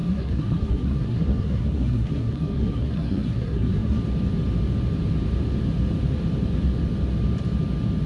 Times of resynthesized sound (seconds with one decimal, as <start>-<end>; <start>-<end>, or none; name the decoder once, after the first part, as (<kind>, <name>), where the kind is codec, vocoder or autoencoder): 0.0-4.0 (codec, SNAC)